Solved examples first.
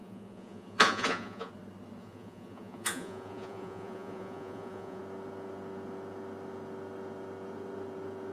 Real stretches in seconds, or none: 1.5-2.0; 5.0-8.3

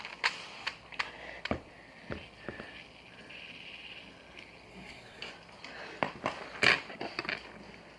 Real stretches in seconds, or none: 0.0-4.7; 5.3-8.0

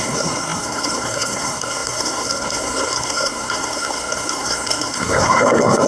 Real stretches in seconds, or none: none

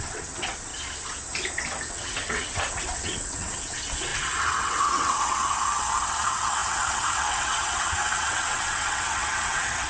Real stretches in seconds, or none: 0.7-1.9